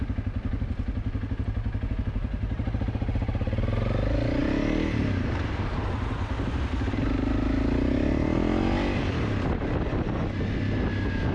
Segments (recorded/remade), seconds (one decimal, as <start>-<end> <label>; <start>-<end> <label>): 0.0-11.3 recorded